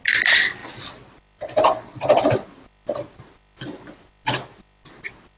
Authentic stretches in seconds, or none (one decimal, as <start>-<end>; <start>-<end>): 0.0-5.4